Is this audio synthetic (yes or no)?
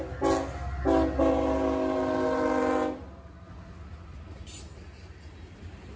no